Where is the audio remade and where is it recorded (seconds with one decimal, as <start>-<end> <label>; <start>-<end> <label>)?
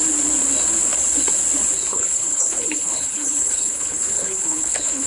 0.0-1.9 recorded; 1.9-5.1 remade